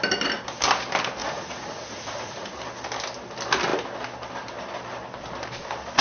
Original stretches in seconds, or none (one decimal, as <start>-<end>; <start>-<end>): 0.0-1.2; 2.6-6.0